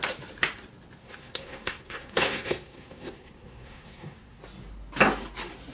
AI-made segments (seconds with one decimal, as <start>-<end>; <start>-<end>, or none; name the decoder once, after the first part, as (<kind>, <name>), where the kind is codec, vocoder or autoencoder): 1.0-4.4 (codec, SNAC)